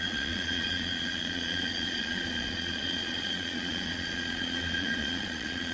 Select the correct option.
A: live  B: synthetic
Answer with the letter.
B